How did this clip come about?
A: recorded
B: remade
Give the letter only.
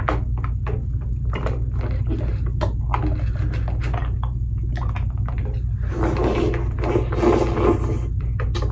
A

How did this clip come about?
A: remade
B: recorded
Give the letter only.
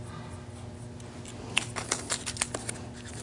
B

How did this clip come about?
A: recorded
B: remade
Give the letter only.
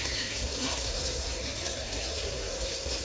B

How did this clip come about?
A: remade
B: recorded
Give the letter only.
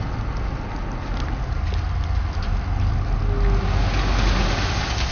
B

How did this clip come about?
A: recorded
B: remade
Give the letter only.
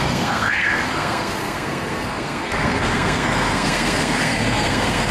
B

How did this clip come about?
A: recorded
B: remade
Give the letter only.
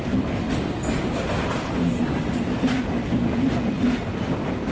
A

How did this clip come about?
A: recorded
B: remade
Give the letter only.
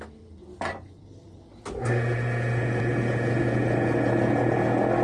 A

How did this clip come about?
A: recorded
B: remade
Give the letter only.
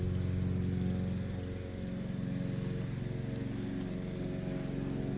A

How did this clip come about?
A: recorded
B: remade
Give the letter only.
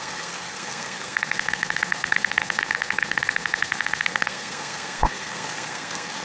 B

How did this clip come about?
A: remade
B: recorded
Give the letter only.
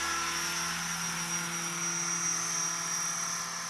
B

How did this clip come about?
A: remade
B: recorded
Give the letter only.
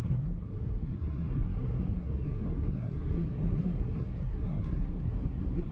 A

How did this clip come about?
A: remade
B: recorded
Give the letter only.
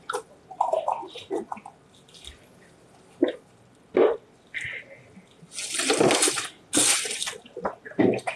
B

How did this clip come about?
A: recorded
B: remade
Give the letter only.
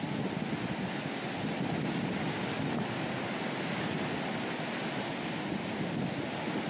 A